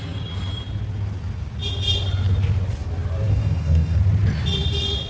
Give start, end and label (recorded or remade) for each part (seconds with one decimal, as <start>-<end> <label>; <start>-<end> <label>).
0.0-3.3 recorded; 3.3-4.0 remade; 4.0-5.1 recorded